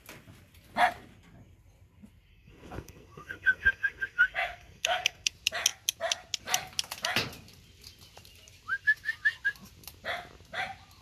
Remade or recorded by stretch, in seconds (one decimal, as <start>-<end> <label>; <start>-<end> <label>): 0.0-2.3 recorded; 2.3-5.3 remade; 5.3-11.0 recorded